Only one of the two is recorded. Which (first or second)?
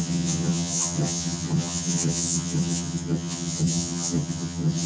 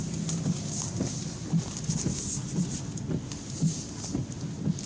second